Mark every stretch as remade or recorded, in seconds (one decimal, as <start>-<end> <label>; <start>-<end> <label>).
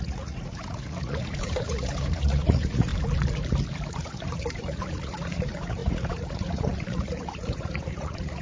0.0-2.9 remade; 2.9-3.9 recorded; 3.9-8.4 remade